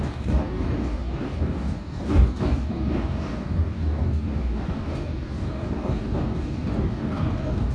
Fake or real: fake